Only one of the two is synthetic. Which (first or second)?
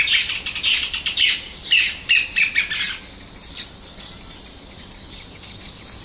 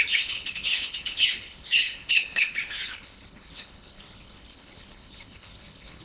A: second